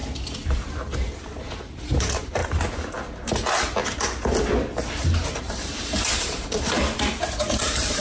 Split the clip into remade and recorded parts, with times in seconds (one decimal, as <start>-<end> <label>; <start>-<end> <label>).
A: 0.0-1.6 recorded; 1.6-2.4 remade; 2.4-5.4 recorded; 5.4-6.8 remade; 6.8-7.6 recorded; 7.6-8.0 remade